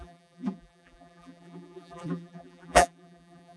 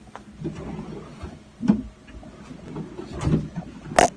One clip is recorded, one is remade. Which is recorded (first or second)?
second